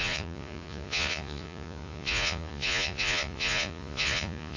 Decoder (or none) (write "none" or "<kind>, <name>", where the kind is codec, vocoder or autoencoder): vocoder, Vocos